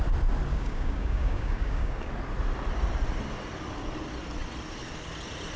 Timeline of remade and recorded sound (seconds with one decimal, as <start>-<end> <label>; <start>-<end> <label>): 0.0-0.5 recorded; 0.5-2.1 remade; 2.1-5.6 recorded